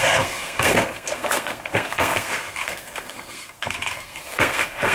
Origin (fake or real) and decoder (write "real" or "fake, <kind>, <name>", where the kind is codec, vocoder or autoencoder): fake, codec, SNAC